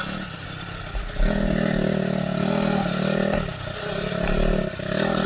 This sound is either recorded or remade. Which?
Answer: recorded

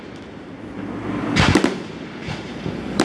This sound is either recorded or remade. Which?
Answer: recorded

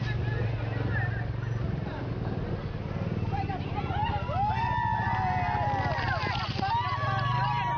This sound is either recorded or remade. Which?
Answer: recorded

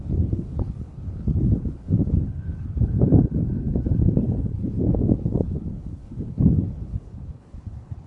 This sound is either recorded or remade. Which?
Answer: remade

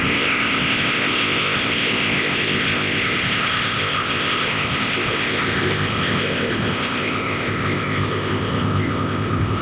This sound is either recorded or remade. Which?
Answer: remade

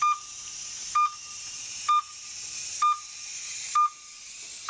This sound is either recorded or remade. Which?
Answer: recorded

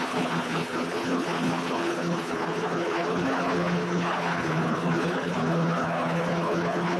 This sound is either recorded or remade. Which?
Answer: remade